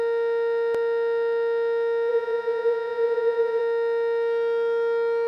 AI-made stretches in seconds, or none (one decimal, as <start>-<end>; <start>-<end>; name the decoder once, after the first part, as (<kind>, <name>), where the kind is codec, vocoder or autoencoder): 2.1-3.6 (vocoder, Vocos)